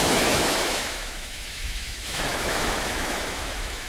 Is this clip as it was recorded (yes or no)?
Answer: no